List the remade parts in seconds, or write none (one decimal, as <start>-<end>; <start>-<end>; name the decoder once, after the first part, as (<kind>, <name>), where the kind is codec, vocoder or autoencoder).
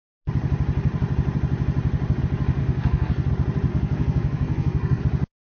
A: 2.6-3.3 (codec, SNAC); 3.7-5.0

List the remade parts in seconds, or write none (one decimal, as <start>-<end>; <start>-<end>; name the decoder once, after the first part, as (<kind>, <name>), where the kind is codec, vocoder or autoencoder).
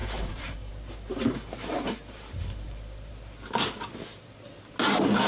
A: 0.0-0.7 (vocoder, BigVGAN v2); 1.1-3.1